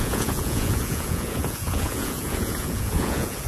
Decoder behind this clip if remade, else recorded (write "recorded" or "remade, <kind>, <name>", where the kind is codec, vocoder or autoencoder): remade, vocoder, Vocos